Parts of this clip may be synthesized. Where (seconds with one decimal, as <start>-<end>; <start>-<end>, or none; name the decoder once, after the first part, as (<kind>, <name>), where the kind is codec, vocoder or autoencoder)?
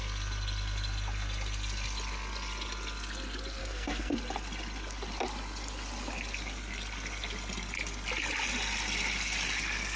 3.6-4.1 (codec, SNAC)